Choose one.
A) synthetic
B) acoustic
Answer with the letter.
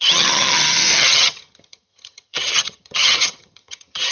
A